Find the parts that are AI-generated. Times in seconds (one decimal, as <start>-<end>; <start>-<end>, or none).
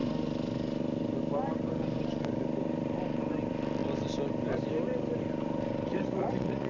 5.9-6.7